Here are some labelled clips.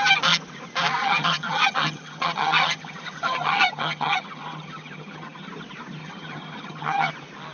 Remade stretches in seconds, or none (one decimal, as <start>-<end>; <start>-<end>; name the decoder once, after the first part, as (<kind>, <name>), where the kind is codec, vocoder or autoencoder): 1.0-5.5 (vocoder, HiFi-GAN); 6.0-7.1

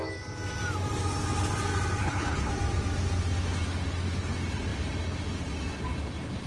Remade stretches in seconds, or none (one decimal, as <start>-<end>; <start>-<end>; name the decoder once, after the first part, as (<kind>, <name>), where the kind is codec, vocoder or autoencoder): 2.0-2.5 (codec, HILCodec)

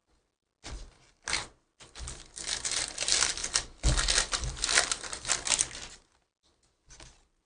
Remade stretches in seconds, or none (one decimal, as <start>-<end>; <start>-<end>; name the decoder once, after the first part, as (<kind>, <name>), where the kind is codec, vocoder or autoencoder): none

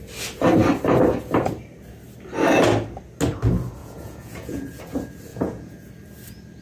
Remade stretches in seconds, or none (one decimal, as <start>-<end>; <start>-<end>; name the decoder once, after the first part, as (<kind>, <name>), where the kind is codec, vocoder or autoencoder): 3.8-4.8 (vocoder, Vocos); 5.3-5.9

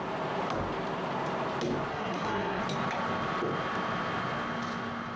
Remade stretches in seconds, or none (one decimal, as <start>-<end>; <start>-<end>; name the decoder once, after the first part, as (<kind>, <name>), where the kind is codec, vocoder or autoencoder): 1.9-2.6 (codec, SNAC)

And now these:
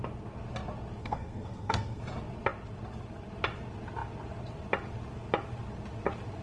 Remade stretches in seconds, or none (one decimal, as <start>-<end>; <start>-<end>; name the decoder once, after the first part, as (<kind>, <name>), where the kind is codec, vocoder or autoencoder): 1.0-2.0 (codec, SNAC)